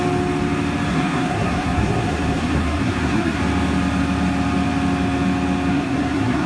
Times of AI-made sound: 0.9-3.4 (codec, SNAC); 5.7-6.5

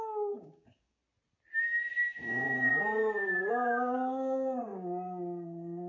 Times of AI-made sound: 0.0-1.0 (codec, DAC); 1.9-2.7; 3.5-5.9

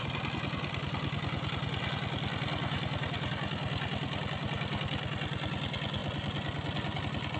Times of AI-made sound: none

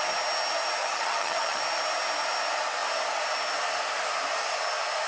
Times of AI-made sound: 0.8-1.6 (vocoder, HiFi-GAN)

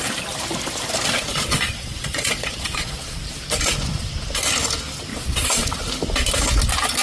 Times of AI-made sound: 1.3-3.2 (vocoder, Vocos); 5.1-5.8

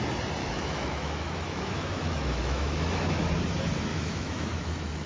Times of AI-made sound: 0.4-3.3 (autoencoder, DAC-VAE); 3.9-5.1

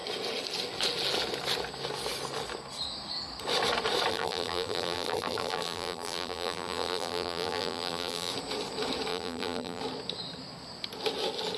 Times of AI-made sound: 4.1-8.3 (vocoder, BigVGAN v2); 9.1-9.8